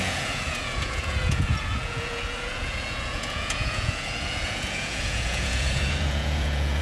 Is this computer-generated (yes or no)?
yes